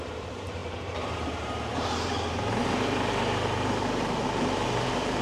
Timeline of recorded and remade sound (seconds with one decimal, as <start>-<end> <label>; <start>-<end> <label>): 0.0-5.2 remade